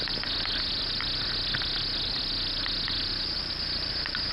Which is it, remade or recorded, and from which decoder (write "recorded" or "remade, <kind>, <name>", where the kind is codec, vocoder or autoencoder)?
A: recorded